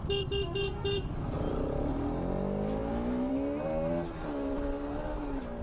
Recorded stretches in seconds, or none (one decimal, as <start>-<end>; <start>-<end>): 0.0-5.6